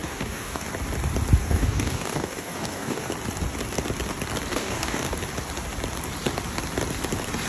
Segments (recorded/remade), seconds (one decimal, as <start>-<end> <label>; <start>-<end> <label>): 0.0-0.7 remade; 0.7-1.4 recorded; 1.4-3.1 remade; 3.1-4.5 recorded; 4.5-5.1 remade; 5.1-7.5 recorded